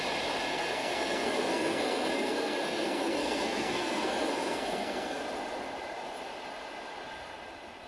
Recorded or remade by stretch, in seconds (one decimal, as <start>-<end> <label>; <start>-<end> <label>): 0.0-0.5 recorded; 0.5-5.2 remade; 5.2-7.9 recorded